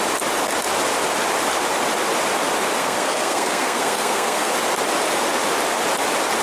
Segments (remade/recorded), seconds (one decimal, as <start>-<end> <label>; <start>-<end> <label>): 0.0-2.8 recorded; 2.8-4.5 remade; 4.5-6.4 recorded

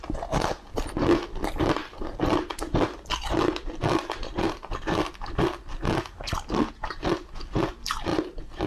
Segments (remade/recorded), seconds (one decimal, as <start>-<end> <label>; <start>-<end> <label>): 0.0-8.7 recorded

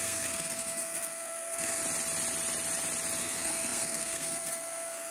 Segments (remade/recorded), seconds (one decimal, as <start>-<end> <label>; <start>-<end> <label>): 0.0-1.8 remade; 1.8-3.2 recorded; 3.2-5.1 remade